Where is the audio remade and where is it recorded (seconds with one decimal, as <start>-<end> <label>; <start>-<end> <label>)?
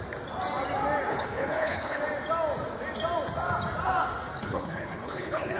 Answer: 0.0-1.1 recorded; 1.1-2.0 remade; 2.0-4.4 recorded; 4.4-5.6 remade